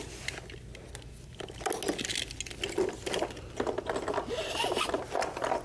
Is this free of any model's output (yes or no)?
yes